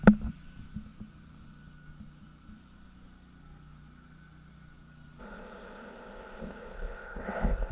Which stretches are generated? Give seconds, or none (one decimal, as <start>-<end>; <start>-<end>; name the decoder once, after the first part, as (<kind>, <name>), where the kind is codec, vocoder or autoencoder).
5.2-7.7 (codec, ZipCodec)